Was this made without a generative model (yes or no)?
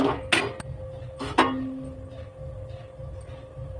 yes